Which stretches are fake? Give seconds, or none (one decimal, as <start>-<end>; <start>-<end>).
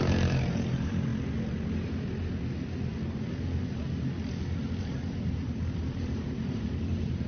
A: 0.0-1.1; 4.8-7.3